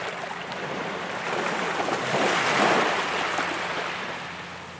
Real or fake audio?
real